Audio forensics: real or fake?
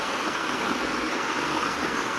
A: fake